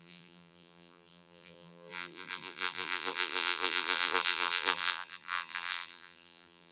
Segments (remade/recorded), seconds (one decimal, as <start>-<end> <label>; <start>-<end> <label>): 0.0-6.7 remade